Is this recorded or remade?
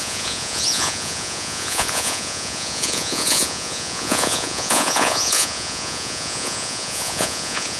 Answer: remade